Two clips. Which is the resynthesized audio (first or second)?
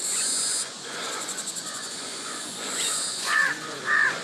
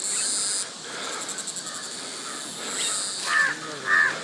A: first